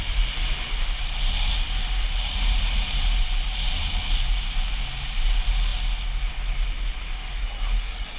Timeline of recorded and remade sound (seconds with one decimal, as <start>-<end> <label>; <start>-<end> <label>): 0.0-7.4 recorded; 7.4-8.2 remade